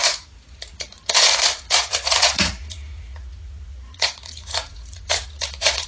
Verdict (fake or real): fake